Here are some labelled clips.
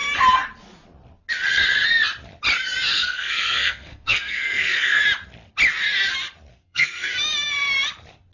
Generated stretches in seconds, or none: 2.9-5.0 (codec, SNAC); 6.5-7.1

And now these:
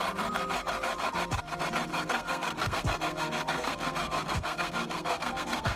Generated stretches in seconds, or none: 1.9-5.8 (codec, SNAC)

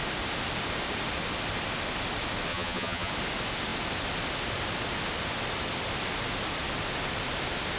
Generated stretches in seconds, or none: 2.5-3.1 (vocoder, BigVGAN v2)